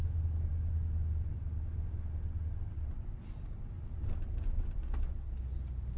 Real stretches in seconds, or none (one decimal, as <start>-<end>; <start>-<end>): 0.0-6.0